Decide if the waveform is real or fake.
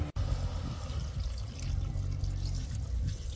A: real